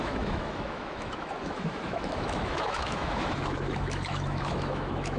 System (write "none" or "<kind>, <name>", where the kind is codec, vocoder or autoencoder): autoencoder, DAC-VAE